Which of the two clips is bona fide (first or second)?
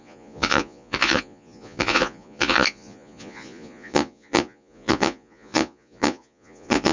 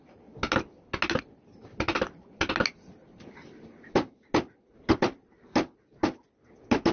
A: second